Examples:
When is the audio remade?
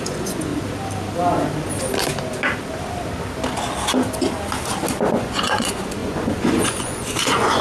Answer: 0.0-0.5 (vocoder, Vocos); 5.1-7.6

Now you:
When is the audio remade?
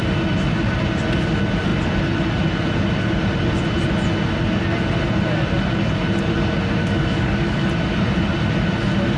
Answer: 6.8-7.7 (codec, DAC)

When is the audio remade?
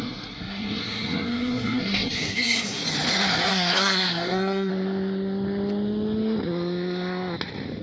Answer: 0.0-2.8 (codec, SNAC); 3.5-4.7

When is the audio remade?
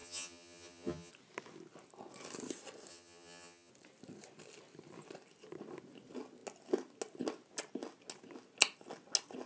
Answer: 0.0-1.1 (vocoder, HiFi-GAN); 2.9-3.7